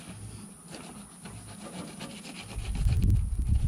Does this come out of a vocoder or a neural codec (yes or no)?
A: no